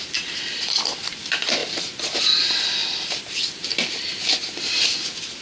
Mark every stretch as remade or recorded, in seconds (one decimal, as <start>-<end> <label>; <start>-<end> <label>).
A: 0.0-5.4 recorded